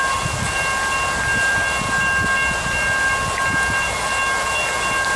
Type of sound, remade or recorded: recorded